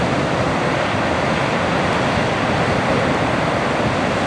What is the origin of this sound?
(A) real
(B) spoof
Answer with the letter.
A